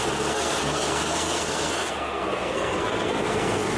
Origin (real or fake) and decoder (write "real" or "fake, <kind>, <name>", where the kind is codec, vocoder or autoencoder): fake, codec, SNAC